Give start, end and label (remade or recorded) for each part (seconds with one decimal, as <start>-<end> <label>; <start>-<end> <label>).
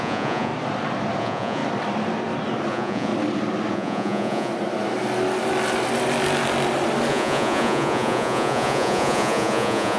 0.0-0.5 remade; 0.5-1.2 recorded; 1.2-1.6 remade; 1.6-2.7 recorded; 2.7-3.1 remade; 3.1-3.7 recorded; 3.7-4.5 remade; 4.5-7.1 recorded; 7.1-10.0 remade